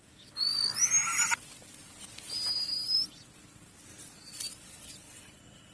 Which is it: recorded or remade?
recorded